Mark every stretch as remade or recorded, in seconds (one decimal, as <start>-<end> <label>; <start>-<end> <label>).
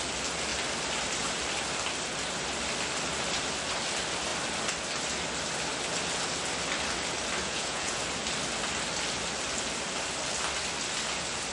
0.0-7.4 recorded; 7.4-8.0 remade; 8.0-11.5 recorded